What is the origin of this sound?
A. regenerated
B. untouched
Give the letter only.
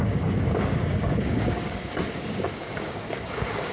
A